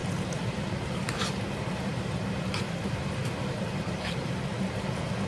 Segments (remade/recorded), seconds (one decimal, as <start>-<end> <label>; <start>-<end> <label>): 0.0-5.3 remade